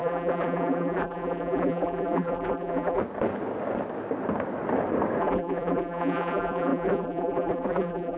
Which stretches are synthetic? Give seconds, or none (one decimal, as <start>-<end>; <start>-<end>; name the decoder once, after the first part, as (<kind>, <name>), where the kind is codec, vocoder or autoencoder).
0.0-3.0 (vocoder, BigVGAN v2); 5.2-8.2